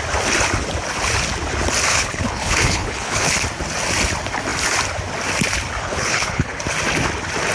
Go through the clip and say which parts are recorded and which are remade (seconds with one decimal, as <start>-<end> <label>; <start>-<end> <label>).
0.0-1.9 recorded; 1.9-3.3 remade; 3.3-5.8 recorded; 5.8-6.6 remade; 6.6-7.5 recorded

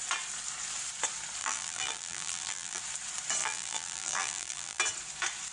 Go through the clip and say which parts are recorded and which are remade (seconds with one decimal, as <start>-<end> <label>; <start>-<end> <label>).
0.0-1.4 recorded; 1.4-2.8 remade; 2.8-3.4 recorded; 3.4-4.8 remade; 4.8-5.5 recorded

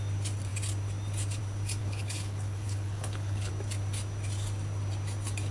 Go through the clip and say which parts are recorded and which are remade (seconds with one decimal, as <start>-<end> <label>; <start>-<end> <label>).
0.0-1.8 recorded; 1.8-3.5 remade; 3.5-5.5 recorded